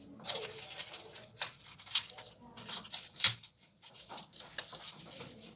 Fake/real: real